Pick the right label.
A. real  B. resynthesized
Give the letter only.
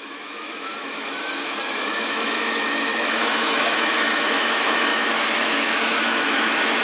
B